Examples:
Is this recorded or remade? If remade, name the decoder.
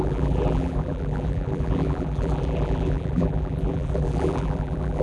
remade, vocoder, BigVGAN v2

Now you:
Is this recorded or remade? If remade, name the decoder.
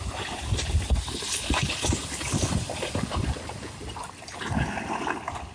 recorded